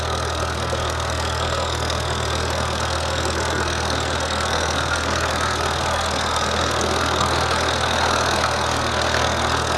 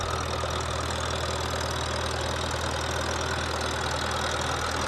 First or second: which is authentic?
second